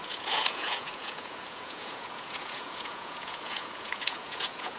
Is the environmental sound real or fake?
fake